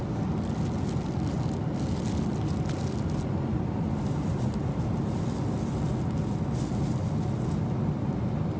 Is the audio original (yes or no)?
yes